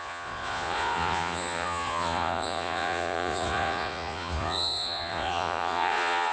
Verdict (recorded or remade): remade